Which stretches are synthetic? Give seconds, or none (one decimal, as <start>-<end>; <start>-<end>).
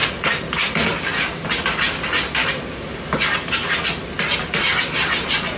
none